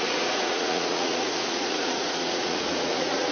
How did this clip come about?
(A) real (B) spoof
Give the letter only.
B